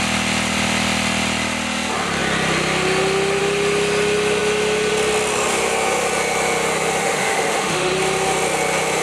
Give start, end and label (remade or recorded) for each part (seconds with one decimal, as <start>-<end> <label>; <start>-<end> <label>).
0.0-7.0 recorded; 7.0-7.9 remade; 7.9-9.0 recorded